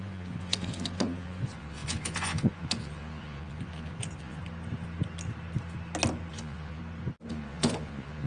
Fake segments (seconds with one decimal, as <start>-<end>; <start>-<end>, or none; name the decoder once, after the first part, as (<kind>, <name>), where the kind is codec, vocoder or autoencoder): 0.0-4.4 (vocoder, Vocos); 6.3-6.8; 7.3-8.3